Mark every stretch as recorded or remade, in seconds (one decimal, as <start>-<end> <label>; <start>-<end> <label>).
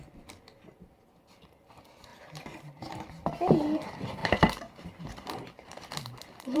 0.0-2.1 recorded; 2.1-3.0 remade; 3.0-4.2 recorded; 4.2-6.6 remade